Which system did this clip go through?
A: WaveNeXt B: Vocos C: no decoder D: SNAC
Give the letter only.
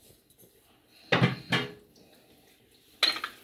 C